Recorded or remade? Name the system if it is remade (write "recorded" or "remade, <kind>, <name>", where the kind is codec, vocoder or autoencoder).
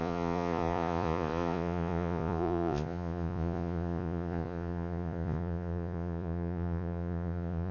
remade, vocoder, Vocos